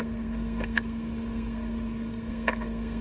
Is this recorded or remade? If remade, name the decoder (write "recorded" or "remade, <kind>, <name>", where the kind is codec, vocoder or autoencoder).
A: remade, codec, SNAC